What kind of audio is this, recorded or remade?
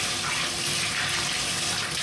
recorded